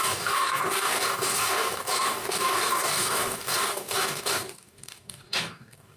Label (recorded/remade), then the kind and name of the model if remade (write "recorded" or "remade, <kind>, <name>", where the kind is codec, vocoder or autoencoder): remade, codec, DAC